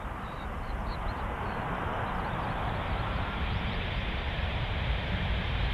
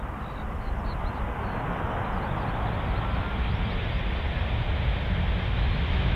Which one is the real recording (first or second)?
second